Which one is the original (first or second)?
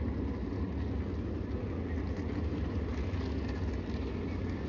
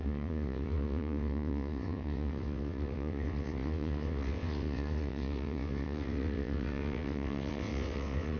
first